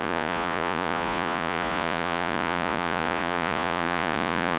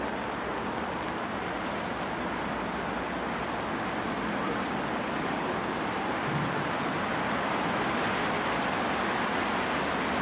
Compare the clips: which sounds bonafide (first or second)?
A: second